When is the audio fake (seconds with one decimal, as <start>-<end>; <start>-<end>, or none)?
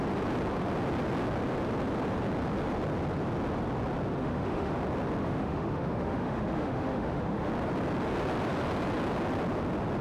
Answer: 4.2-4.7; 5.2-7.5